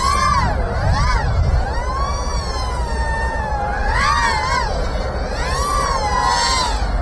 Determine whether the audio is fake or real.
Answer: real